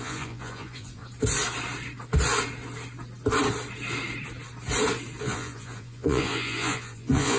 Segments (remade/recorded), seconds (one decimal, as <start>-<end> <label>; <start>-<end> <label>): 0.0-1.0 remade; 1.0-5.2 recorded; 5.2-7.4 remade